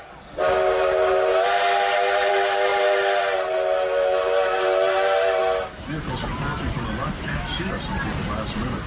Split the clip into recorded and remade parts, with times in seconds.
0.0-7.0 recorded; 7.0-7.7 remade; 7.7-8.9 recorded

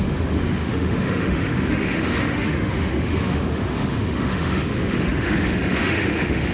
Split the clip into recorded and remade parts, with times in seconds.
0.0-6.5 remade

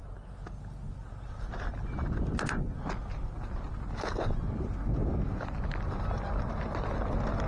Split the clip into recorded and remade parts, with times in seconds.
0.0-7.5 recorded